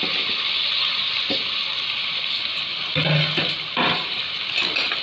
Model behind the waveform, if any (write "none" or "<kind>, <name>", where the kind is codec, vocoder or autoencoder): none